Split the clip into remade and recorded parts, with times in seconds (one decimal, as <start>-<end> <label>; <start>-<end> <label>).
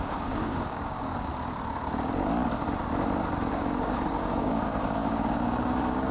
0.0-1.3 remade; 1.3-3.5 recorded; 3.5-6.1 remade